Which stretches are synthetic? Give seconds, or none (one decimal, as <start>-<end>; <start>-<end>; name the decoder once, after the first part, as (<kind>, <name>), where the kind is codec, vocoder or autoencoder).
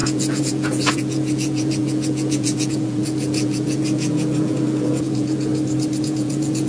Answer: 0.0-5.5 (vocoder, Vocos); 6.0-6.7